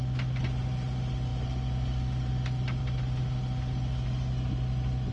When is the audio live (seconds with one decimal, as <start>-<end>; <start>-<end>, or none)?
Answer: 0.0-5.1